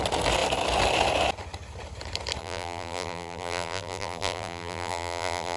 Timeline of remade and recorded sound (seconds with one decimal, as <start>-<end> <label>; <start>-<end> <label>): 0.0-2.4 recorded; 2.4-5.6 remade